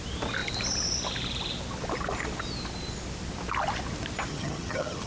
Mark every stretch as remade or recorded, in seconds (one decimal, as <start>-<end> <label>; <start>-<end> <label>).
0.0-4.3 recorded; 4.3-5.1 remade